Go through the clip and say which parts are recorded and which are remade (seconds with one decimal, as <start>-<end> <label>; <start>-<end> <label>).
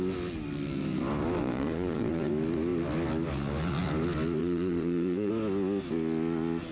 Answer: 0.0-1.4 recorded; 1.4-2.3 remade; 2.3-4.4 recorded; 4.4-5.3 remade; 5.3-6.7 recorded